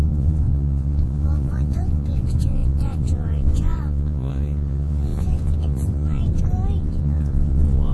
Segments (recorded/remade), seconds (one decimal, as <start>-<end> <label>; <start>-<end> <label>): 0.0-6.2 remade; 6.2-6.8 recorded; 6.8-7.9 remade